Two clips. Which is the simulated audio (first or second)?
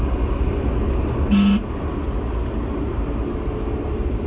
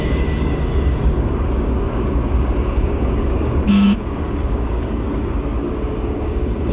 second